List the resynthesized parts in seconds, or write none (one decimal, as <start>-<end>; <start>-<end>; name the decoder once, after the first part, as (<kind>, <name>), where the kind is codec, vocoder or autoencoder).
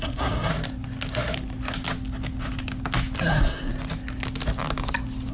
0.0-0.5 (codec, SNAC); 3.3-3.7